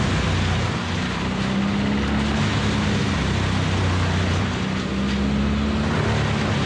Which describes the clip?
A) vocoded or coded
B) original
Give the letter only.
B